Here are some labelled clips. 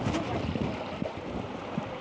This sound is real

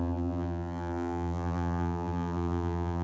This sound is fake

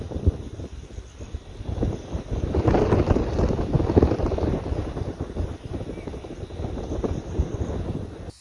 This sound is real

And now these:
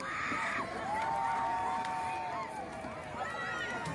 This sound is real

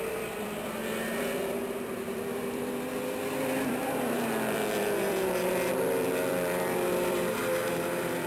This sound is fake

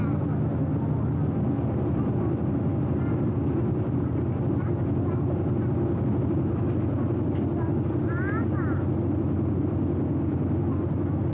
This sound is real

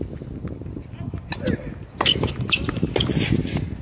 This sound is real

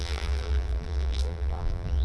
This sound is fake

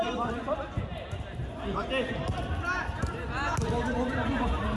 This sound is real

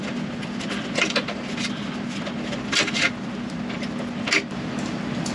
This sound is real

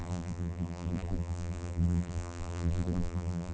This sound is fake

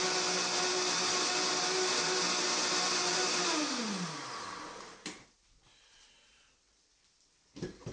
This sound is real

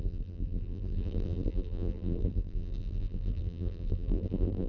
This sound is fake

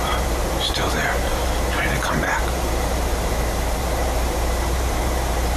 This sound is fake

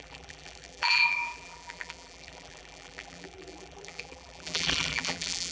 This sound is fake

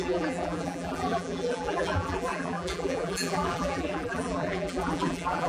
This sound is fake